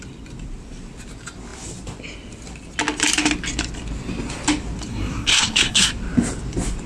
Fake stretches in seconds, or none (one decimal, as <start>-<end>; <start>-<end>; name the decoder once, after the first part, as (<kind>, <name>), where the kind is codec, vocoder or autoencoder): 4.9-5.9 (codec, SNAC)